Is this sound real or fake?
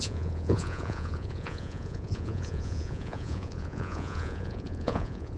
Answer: fake